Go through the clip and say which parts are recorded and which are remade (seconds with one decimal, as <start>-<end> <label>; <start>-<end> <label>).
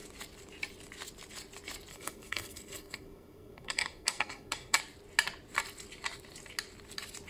0.0-1.9 recorded; 1.9-4.8 remade; 4.8-7.3 recorded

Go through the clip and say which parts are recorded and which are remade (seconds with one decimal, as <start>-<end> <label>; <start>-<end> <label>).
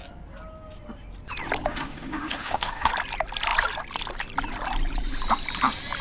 0.0-1.7 recorded; 1.7-2.9 remade; 2.9-6.0 recorded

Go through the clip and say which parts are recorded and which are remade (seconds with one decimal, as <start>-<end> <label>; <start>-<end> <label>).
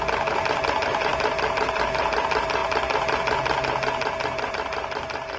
0.0-2.6 remade; 2.6-4.5 recorded; 4.5-5.4 remade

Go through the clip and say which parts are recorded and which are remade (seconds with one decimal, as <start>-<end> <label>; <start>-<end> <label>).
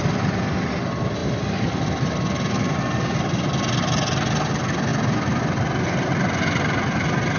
0.0-7.4 recorded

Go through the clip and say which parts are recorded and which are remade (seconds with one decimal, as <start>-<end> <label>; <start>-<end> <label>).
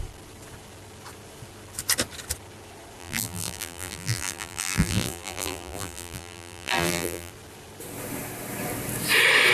0.0-3.0 recorded; 3.0-7.3 remade; 7.3-9.5 recorded